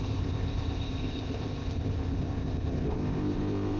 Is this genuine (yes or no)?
no